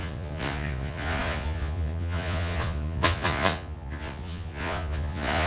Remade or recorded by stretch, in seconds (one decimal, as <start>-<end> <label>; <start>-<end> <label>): 0.0-5.5 remade

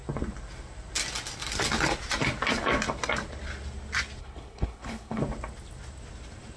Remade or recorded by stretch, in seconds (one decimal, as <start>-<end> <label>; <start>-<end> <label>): 0.0-4.2 recorded; 4.2-5.2 remade; 5.2-6.6 recorded

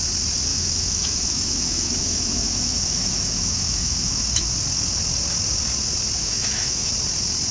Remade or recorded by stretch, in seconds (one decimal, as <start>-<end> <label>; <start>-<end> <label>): 0.0-0.5 recorded; 0.5-4.5 remade; 4.5-6.2 recorded; 6.2-6.9 remade; 6.9-7.5 recorded